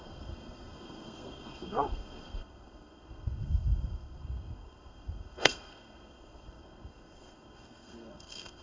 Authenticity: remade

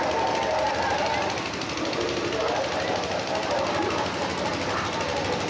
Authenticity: recorded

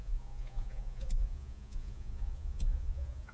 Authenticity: remade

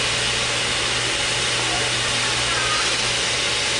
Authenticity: recorded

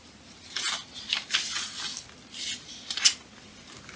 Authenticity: recorded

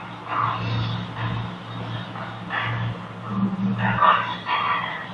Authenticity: recorded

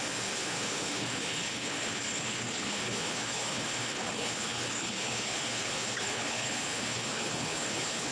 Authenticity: remade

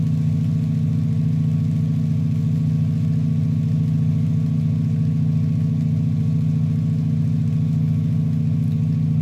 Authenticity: recorded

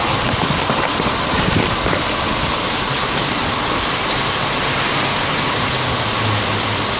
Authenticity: recorded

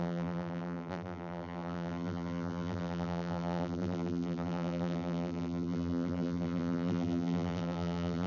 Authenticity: remade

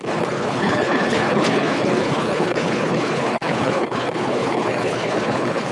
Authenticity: remade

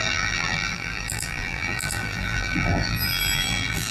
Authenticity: remade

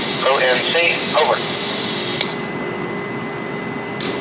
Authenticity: recorded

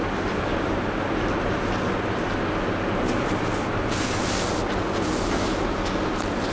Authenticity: recorded